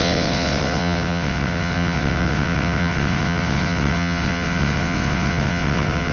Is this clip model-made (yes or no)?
yes